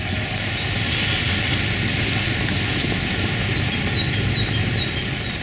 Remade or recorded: recorded